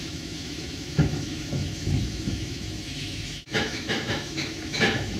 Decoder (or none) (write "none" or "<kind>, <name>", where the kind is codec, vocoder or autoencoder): autoencoder, DAC-VAE